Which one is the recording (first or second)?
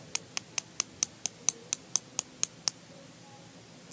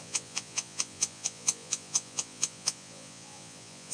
first